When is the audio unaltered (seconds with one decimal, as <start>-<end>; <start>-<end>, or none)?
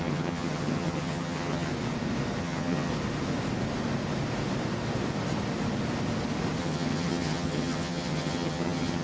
1.7-2.4; 2.9-6.6